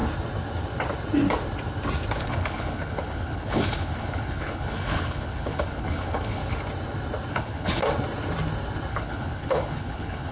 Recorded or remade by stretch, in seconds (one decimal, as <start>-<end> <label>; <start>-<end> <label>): 0.0-2.2 recorded; 2.2-6.4 remade; 6.4-7.3 recorded; 7.3-7.8 remade; 7.8-8.9 recorded; 8.9-10.3 remade